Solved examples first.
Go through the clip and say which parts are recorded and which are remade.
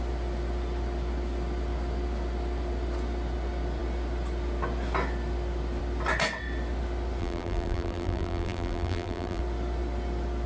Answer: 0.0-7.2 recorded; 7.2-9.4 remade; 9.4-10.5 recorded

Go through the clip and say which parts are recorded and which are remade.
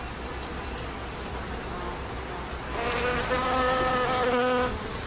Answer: 0.0-5.1 recorded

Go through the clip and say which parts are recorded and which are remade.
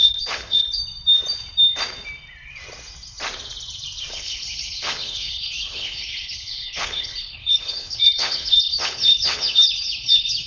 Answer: 0.0-0.8 remade; 0.8-4.1 recorded; 4.1-10.5 remade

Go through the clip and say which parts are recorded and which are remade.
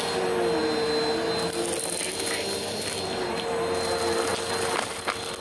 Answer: 0.0-5.4 recorded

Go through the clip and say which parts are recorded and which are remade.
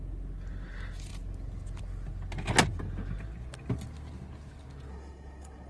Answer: 0.0-4.9 recorded; 4.9-5.7 remade